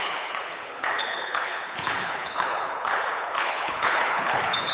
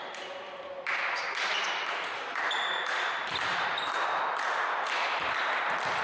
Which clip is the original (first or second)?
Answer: second